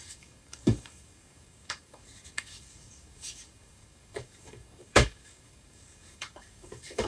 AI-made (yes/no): yes